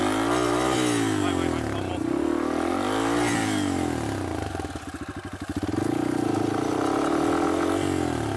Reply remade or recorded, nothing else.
recorded